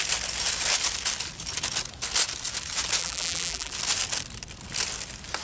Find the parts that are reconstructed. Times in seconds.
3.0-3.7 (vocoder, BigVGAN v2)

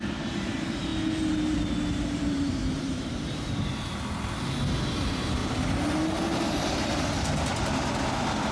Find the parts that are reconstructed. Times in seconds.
0.0-0.9 (vocoder, BigVGAN v2); 1.9-3.7; 5.0-5.4

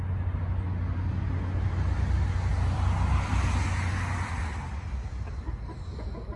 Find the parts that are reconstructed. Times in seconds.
none

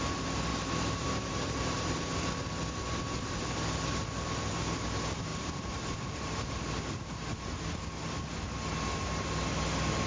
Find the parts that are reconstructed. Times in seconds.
0.5-2.0 (vocoder, BigVGAN v2); 5.3-6.8

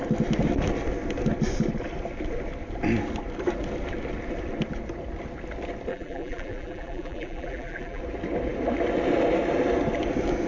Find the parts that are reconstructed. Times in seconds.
5.9-8.0 (vocoder, BigVGAN v2)